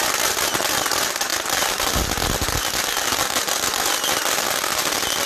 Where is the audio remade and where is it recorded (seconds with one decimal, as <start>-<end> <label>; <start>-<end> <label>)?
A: 0.0-5.3 recorded